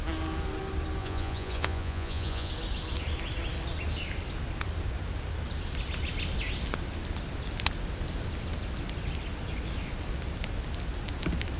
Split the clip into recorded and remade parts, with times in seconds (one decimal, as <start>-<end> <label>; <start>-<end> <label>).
0.0-1.0 recorded; 1.0-2.5 remade; 2.5-11.6 recorded